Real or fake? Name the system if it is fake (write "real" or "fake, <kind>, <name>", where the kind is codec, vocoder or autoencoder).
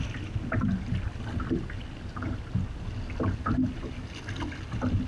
real